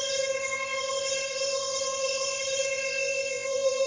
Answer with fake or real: fake